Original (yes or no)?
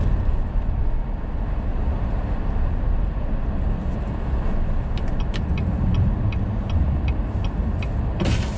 yes